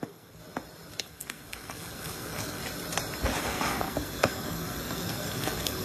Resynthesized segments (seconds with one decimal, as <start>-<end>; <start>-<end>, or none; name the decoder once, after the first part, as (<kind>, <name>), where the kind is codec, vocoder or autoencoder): 0.0-0.4 (codec, SNAC); 1.0-2.6; 3.4-5.8